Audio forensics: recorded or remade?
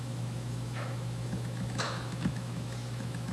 remade